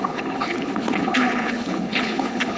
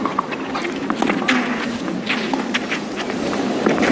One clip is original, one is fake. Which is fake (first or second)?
first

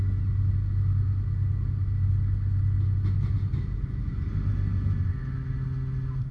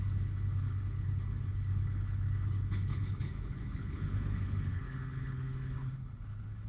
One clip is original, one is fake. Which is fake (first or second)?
second